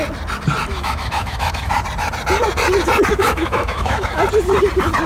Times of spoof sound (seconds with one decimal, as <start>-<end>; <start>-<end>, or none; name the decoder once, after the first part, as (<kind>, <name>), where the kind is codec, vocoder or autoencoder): 0.7-1.7 (autoencoder, DAC-VAE); 3.1-4.2